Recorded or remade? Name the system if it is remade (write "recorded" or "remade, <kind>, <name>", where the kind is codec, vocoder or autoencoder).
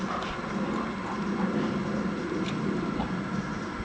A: recorded